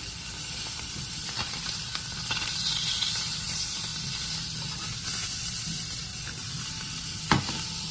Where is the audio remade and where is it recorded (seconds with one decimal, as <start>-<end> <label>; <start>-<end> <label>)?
0.0-7.9 recorded